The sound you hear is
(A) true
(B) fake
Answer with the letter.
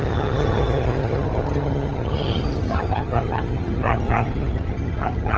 B